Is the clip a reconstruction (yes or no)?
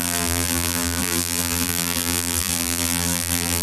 yes